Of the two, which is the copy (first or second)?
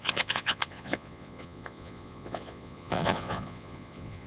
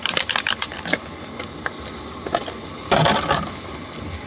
first